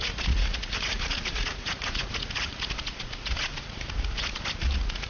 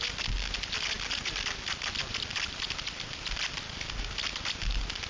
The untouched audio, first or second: second